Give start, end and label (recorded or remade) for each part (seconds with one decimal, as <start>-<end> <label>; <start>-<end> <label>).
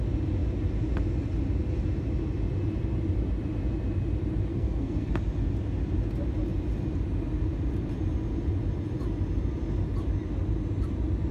0.0-4.5 recorded; 4.5-5.1 remade; 5.1-11.3 recorded